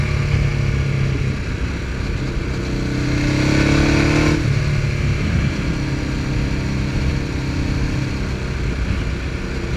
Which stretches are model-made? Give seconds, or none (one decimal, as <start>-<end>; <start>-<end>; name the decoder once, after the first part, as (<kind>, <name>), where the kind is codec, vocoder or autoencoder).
none